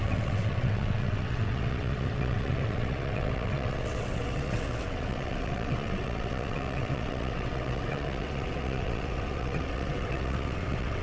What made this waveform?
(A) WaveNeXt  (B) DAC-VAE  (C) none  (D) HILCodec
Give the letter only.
A